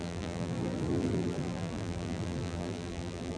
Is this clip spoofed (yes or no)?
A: yes